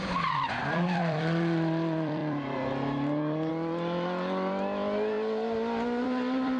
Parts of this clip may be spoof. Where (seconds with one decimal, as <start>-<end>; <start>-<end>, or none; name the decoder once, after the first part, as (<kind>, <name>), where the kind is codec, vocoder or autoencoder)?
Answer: 0.0-6.6 (vocoder, BigVGAN v2)